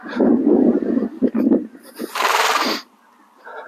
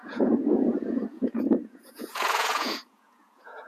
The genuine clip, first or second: first